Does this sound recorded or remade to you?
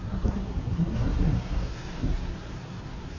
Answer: remade